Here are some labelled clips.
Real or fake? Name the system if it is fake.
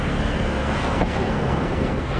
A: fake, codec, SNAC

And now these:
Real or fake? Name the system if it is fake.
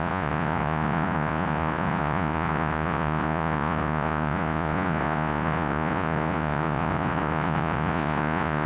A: fake, vocoder, Vocos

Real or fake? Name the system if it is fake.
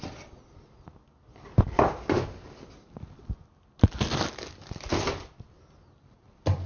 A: real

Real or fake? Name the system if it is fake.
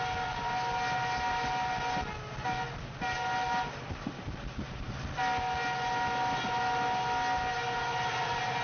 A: real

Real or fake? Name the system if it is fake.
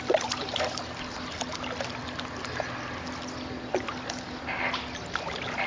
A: fake, vocoder, BigVGAN v2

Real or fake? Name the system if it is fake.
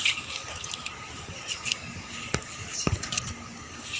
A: fake, codec, DAC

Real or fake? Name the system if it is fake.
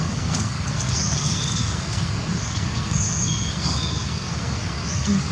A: fake, codec, SNAC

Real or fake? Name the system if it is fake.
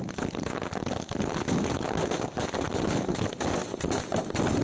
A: real